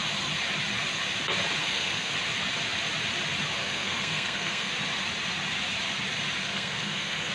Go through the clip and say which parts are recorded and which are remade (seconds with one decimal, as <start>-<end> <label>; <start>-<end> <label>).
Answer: 0.0-1.6 recorded; 1.6-2.1 remade; 2.1-3.6 recorded; 3.6-4.7 remade; 4.7-6.4 recorded; 6.4-7.3 remade

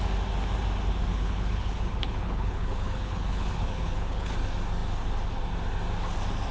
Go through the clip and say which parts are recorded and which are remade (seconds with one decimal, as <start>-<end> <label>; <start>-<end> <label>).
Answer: 0.0-1.1 recorded; 1.1-4.3 remade; 4.3-6.5 recorded

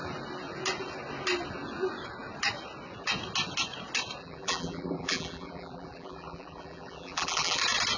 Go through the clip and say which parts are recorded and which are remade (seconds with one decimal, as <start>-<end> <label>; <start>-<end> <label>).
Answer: 0.0-4.2 recorded; 4.2-7.6 remade; 7.6-8.0 recorded

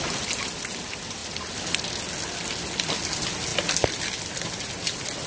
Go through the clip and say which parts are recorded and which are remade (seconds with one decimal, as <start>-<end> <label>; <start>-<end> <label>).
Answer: 0.0-5.3 recorded

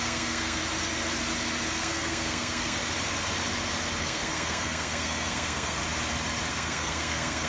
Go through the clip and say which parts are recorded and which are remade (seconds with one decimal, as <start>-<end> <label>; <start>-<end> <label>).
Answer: 0.0-0.6 remade; 0.6-1.7 recorded; 1.7-2.8 remade; 2.8-4.0 recorded; 4.0-5.8 remade; 5.8-6.5 recorded; 6.5-7.5 remade

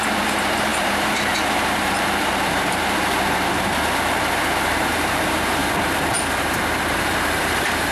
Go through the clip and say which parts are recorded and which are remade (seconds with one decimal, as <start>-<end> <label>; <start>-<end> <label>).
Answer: 0.0-5.6 remade; 5.6-7.0 recorded; 7.0-7.9 remade